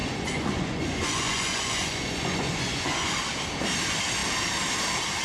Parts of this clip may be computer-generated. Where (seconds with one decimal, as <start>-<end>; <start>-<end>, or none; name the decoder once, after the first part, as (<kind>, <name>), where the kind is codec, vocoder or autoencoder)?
0.0-3.1 (vocoder, Vocos)

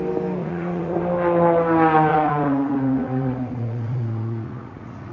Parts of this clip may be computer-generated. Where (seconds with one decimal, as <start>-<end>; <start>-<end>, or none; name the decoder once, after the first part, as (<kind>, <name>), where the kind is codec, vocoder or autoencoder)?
0.4-1.0 (vocoder, Vocos); 2.1-5.1

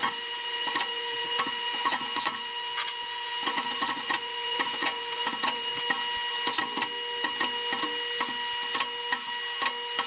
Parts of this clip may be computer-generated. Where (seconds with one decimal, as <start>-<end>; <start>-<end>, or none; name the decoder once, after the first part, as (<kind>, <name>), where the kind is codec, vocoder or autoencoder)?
0.0-5.7 (vocoder, Vocos)

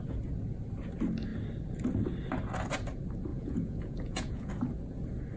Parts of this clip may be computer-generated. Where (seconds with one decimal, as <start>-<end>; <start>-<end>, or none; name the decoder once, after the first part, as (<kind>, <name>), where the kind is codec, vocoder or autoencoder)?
3.3-4.5 (vocoder, Vocos)